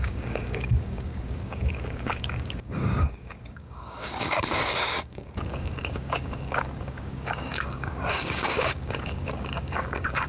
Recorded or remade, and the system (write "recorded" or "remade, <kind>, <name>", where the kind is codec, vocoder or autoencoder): remade, codec, DAC